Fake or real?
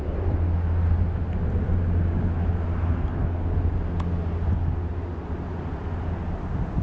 real